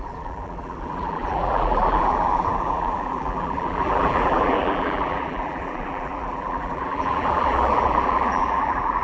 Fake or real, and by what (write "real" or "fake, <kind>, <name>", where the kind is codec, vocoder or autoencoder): fake, vocoder, BigVGAN v2